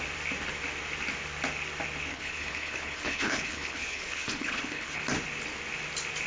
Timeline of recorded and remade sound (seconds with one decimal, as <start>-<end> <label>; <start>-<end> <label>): 0.0-2.1 recorded; 2.1-5.0 remade; 5.0-6.3 recorded